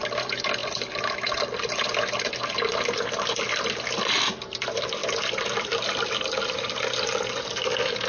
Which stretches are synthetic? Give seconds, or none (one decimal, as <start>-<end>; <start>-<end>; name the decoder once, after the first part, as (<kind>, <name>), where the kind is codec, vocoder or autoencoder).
none